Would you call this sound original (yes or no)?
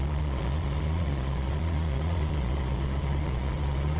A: no